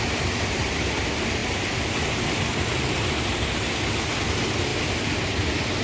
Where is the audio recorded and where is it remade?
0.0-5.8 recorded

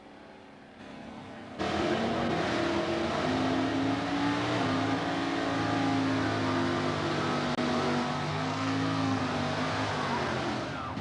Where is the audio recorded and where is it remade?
0.0-0.8 recorded; 0.8-1.6 remade; 1.6-8.3 recorded; 8.3-9.2 remade; 9.2-11.0 recorded

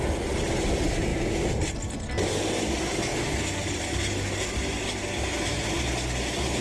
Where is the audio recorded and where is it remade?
0.0-6.6 recorded

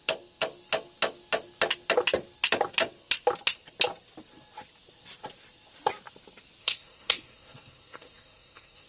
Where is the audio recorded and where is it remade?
0.0-6.6 recorded; 6.6-8.9 remade

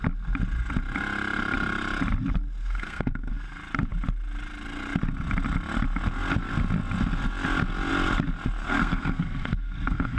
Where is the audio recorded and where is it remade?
0.0-2.6 recorded; 2.6-3.3 remade; 3.3-8.6 recorded; 8.6-10.2 remade